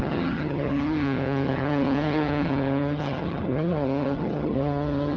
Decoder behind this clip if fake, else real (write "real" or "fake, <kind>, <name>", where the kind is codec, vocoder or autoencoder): fake, vocoder, HiFi-GAN